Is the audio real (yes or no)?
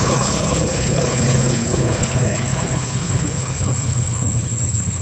no